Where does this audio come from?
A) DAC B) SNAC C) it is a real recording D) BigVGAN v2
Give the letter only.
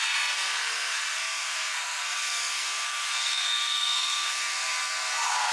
B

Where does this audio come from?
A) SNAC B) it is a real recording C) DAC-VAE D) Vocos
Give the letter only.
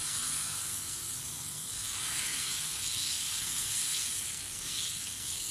A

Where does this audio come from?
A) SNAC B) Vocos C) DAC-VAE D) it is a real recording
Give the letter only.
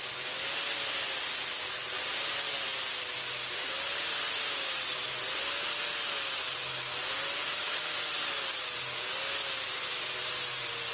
D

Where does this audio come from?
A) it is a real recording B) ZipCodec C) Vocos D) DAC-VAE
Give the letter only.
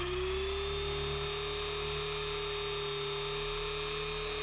A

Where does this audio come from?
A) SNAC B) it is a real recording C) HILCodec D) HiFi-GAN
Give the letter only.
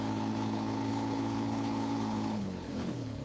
C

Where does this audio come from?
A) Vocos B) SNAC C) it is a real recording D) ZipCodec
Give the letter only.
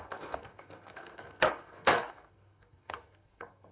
B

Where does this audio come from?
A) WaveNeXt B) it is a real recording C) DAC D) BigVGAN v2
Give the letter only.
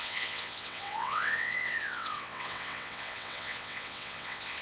A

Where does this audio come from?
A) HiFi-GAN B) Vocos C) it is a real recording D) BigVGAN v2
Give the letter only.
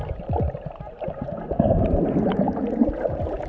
D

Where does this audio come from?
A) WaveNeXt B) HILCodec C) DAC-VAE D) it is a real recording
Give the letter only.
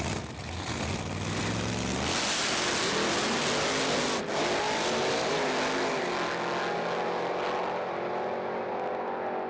D